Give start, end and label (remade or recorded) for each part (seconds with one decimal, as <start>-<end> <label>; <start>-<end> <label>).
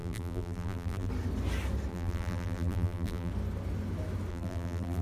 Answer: 0.0-1.1 remade; 1.1-1.9 recorded; 1.9-3.3 remade; 3.3-4.3 recorded; 4.3-5.0 remade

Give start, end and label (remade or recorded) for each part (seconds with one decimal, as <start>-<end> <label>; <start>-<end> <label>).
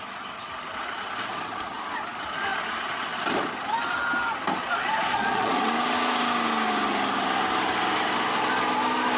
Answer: 0.0-4.6 recorded; 4.6-5.7 remade; 5.7-9.2 recorded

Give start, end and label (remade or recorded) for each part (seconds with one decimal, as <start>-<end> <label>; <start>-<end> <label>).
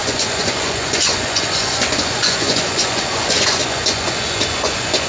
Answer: 0.0-5.1 remade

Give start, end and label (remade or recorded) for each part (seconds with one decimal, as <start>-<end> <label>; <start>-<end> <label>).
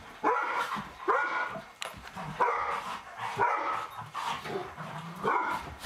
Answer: 0.0-0.4 recorded; 0.4-1.0 remade; 1.0-4.6 recorded; 4.6-5.9 remade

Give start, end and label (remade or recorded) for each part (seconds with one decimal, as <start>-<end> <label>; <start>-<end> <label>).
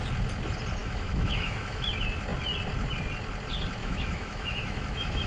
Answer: 0.0-0.8 recorded; 0.8-1.9 remade; 1.9-3.8 recorded; 3.8-5.3 remade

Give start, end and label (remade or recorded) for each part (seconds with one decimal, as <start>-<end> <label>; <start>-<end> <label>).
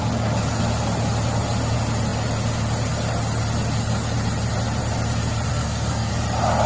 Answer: 0.0-5.5 recorded; 5.5-6.1 remade; 6.1-6.7 recorded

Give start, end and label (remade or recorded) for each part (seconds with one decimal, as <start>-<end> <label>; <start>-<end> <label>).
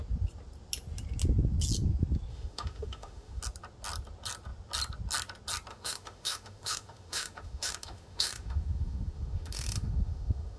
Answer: 0.0-2.3 recorded; 2.3-3.4 remade; 3.4-5.7 recorded; 5.7-10.6 remade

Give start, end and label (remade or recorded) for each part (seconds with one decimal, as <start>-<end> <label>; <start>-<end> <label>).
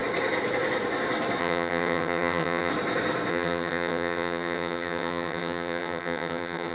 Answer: 0.0-1.4 recorded; 1.4-2.7 remade; 2.7-3.3 recorded; 3.3-6.7 remade